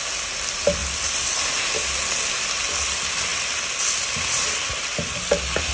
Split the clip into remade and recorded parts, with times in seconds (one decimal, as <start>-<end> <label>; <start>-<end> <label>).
0.0-5.7 recorded

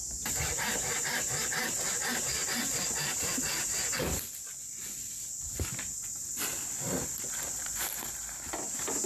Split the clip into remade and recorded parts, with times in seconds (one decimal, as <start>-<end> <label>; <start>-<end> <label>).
0.0-9.1 recorded